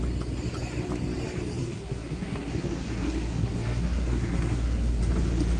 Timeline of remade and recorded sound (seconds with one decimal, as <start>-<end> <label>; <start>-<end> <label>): 0.0-1.6 recorded; 1.6-5.0 remade; 5.0-5.6 recorded